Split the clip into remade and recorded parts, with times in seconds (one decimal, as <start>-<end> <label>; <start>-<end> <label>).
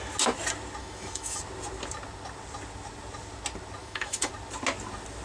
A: 0.0-0.8 recorded; 0.8-1.4 remade; 1.4-3.8 recorded; 3.8-4.3 remade; 4.3-5.2 recorded